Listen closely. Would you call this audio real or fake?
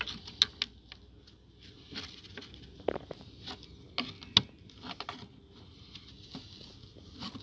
real